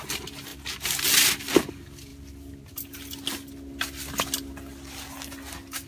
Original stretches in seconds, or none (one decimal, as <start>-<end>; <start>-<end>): 0.0-5.9